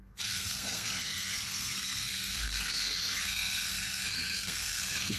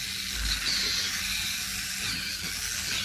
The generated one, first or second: first